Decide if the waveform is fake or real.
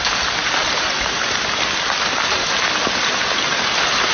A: real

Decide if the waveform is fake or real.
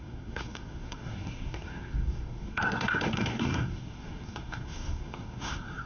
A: fake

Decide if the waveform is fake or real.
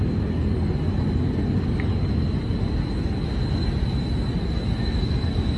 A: real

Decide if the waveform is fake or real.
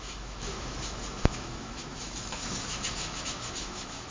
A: fake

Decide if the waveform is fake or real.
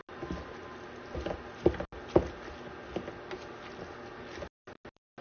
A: real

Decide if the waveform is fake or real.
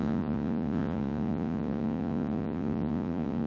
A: fake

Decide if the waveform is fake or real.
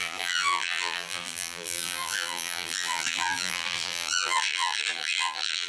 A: fake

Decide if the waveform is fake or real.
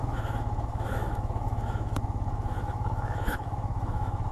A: fake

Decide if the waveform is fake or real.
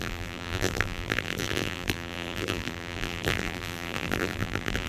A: fake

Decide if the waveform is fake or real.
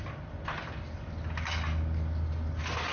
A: real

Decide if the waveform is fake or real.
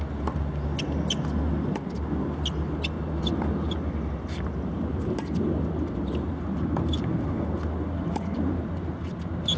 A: real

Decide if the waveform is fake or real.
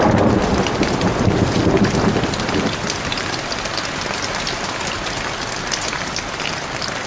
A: real